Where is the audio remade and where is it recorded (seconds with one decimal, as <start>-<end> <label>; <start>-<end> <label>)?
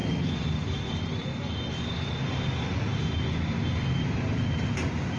0.0-5.2 recorded